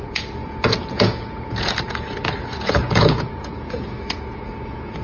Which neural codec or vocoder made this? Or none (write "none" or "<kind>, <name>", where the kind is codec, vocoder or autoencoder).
vocoder, Vocos